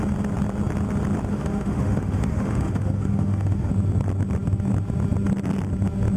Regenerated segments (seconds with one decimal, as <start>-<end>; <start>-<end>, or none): 1.3-3.7